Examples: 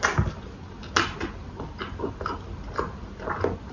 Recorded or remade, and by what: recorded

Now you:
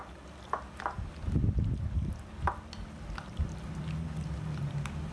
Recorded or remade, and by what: recorded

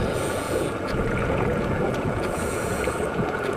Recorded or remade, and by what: remade, vocoder, Vocos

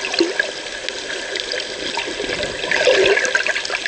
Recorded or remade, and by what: recorded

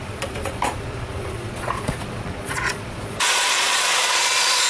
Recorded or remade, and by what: remade, vocoder, Vocos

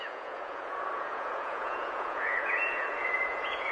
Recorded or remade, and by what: remade, vocoder, Vocos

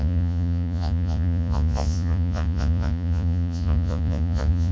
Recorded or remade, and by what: remade, vocoder, Vocos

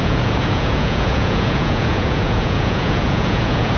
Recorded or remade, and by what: remade, vocoder, Vocos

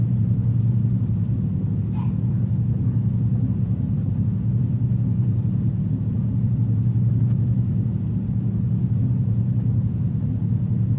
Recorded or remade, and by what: remade, vocoder, Vocos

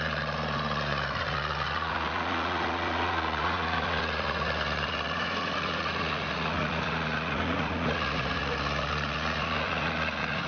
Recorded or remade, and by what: remade, vocoder, Vocos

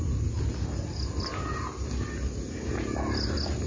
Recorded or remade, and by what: recorded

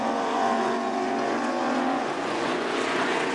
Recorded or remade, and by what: remade, vocoder, Vocos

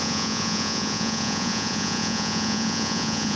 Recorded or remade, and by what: remade, vocoder, Vocos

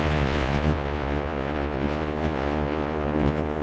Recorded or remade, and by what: remade, vocoder, Vocos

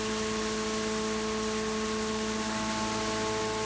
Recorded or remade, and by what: recorded